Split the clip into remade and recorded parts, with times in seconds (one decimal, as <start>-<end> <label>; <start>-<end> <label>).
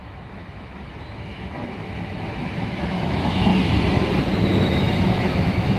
0.0-3.5 remade; 3.5-4.4 recorded; 4.4-5.8 remade